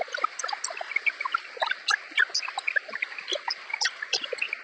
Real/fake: real